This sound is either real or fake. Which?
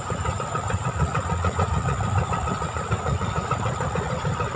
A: fake